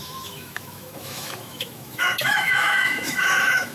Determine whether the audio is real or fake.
fake